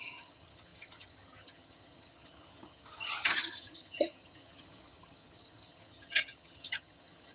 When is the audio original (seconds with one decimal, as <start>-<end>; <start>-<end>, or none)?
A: none